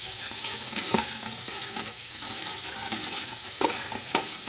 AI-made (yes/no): yes